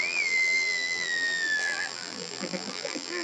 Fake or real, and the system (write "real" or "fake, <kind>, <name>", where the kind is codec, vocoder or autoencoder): fake, vocoder, BigVGAN v2